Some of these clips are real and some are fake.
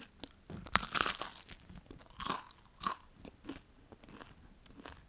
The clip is real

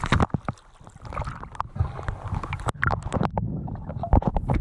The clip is real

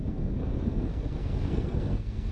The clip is fake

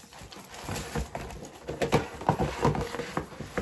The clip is real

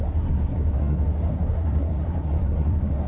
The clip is fake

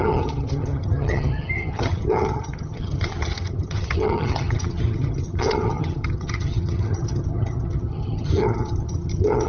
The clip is fake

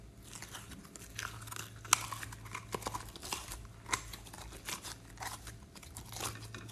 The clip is real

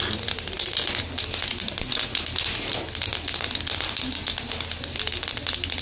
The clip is real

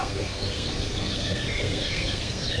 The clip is fake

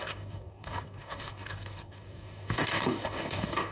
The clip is fake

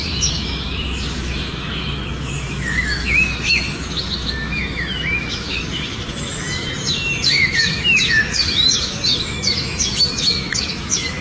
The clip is fake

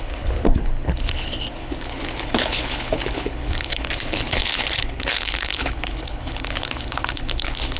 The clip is fake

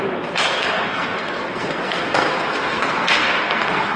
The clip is fake